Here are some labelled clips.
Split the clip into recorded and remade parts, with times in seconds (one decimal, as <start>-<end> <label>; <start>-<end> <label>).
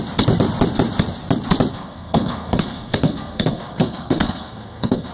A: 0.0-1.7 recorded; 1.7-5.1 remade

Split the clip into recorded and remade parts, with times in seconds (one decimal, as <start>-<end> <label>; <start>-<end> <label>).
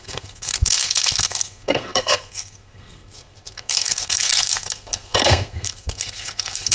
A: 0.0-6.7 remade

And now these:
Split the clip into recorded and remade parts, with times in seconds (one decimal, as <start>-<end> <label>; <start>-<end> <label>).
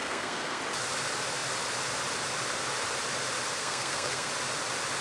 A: 0.0-0.6 remade; 0.6-3.6 recorded; 3.6-4.3 remade; 4.3-5.0 recorded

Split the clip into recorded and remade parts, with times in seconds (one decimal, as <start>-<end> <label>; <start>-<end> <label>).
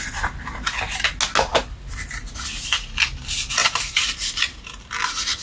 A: 0.0-5.4 recorded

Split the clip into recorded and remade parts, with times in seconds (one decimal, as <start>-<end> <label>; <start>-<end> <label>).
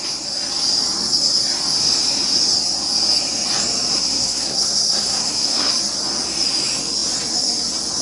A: 0.0-3.9 recorded; 3.9-5.7 remade; 5.7-8.0 recorded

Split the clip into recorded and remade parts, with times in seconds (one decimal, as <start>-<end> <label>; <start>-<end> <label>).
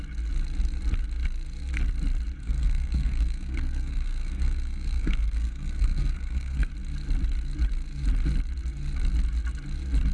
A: 0.0-2.4 recorded; 2.4-6.7 remade; 6.7-10.1 recorded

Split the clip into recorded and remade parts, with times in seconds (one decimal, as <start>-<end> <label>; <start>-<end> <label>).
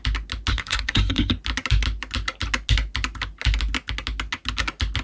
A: 0.0-0.5 recorded; 0.5-1.3 remade; 1.3-5.0 recorded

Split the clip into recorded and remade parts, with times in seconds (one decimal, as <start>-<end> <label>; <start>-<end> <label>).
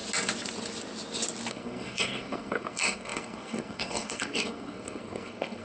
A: 0.0-1.5 recorded; 1.5-5.6 remade